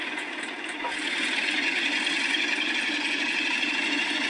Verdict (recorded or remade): remade